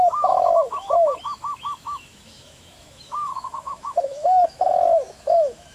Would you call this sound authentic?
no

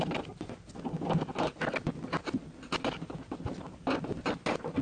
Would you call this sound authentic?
yes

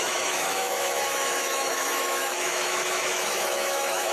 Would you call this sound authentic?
no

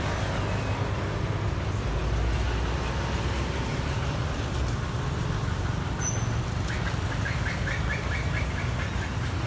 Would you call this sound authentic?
yes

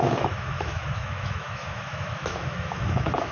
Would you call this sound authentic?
no